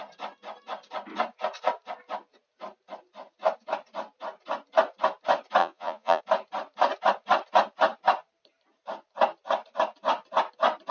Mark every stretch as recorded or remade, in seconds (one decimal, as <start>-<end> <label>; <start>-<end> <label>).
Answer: 0.0-5.6 recorded; 5.6-6.2 remade; 6.2-10.9 recorded